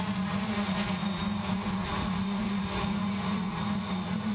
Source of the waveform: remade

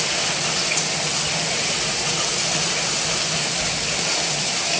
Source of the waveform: recorded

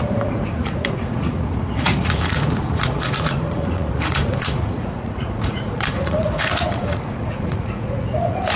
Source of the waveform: remade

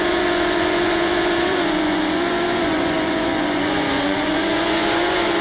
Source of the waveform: remade